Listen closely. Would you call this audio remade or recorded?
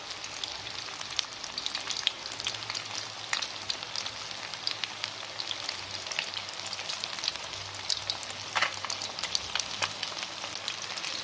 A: recorded